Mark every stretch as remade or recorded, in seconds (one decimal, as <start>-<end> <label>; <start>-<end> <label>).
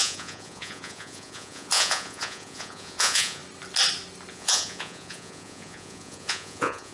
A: 0.0-3.4 remade; 3.4-4.3 recorded; 4.3-6.9 remade